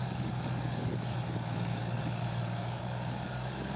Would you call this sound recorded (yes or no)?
no